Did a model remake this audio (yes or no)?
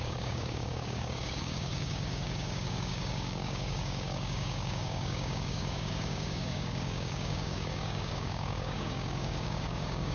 yes